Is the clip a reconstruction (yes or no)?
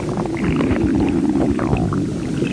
no